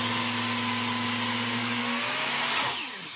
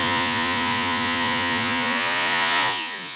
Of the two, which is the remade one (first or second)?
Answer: second